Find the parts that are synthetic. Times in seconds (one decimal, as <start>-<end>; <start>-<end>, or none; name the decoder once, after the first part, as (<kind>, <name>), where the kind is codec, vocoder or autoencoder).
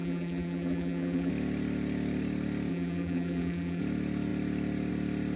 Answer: 0.0-1.3 (vocoder, BigVGAN v2); 2.7-3.8